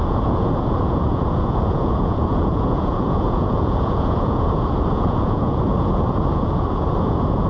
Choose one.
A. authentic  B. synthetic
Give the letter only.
B